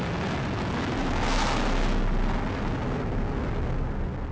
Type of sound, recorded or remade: recorded